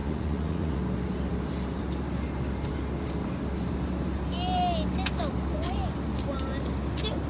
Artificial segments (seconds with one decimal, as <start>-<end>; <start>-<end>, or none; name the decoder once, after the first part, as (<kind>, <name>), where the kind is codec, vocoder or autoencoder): 0.0-0.8 (vocoder, Vocos)